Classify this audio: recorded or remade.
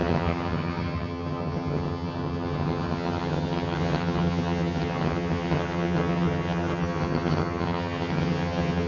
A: remade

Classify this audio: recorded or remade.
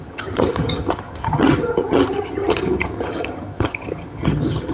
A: remade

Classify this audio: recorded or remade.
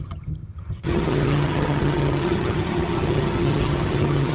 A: remade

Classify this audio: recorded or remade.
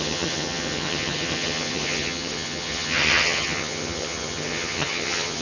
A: remade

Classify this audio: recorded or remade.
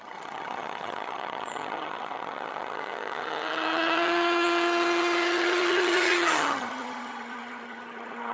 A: remade